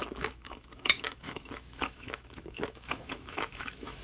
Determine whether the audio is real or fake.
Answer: fake